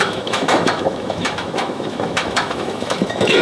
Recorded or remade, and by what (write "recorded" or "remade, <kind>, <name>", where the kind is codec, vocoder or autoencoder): remade, autoencoder, DAC-VAE